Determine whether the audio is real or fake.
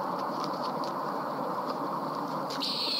fake